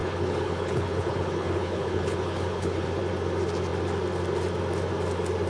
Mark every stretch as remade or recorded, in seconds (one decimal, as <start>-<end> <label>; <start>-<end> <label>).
0.0-3.0 remade; 3.0-5.5 recorded